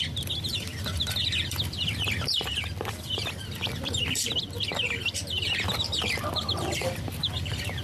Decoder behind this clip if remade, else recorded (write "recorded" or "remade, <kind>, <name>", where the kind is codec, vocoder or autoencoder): remade, vocoder, BigVGAN v2